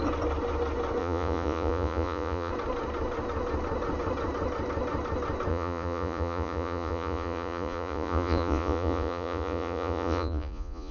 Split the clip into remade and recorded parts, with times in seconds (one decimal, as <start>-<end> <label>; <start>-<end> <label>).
0.0-1.0 recorded; 1.0-2.5 remade; 2.5-5.5 recorded; 5.5-10.9 remade